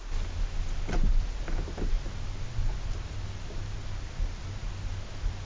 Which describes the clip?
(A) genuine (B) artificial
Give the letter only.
A